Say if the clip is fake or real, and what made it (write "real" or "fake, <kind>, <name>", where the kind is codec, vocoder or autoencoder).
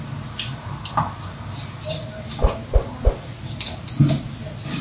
real